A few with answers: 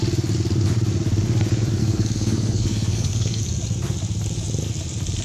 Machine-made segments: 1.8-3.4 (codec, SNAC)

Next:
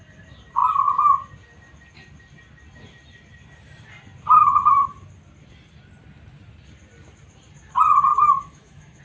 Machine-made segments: 8.1-9.0 (autoencoder, DAC-VAE)

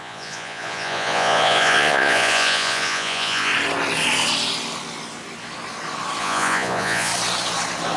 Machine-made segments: 0.0-3.5 (vocoder, Vocos); 6.2-7.1

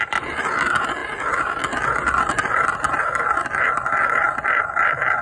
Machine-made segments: none

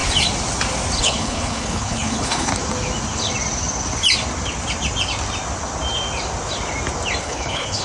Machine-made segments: 1.0-2.5 (codec, HILCodec); 7.2-7.8

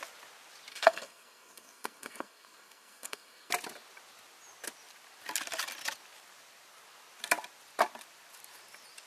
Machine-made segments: 0.7-3.5 (codec, SNAC)

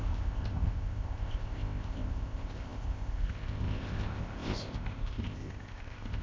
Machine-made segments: 0.0-6.2 (codec, ZipCodec)